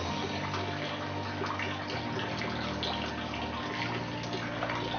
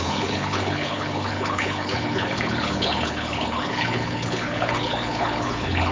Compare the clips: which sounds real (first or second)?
first